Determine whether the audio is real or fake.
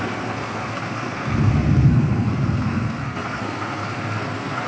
fake